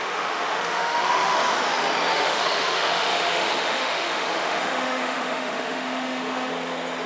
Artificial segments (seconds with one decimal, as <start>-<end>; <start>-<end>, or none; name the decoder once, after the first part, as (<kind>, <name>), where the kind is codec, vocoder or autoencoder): 0.0-1.4 (autoencoder, DAC-VAE); 2.1-6.5